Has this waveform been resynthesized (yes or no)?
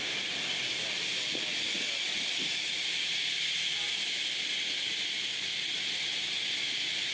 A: no